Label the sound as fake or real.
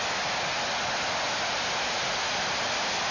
real